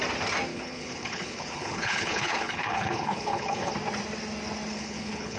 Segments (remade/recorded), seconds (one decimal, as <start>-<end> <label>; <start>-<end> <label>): 0.0-0.5 recorded; 0.5-3.7 remade; 3.7-4.7 recorded; 4.7-5.4 remade